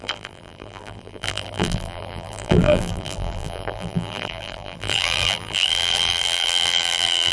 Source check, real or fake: fake